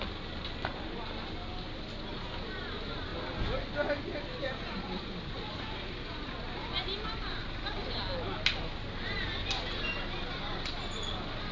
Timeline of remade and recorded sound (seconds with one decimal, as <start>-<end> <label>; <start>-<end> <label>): 0.0-11.5 recorded